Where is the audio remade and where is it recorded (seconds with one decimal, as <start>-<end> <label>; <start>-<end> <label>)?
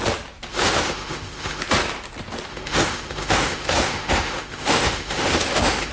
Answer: 0.0-0.5 recorded; 0.5-1.6 remade; 1.6-2.5 recorded; 2.5-5.9 remade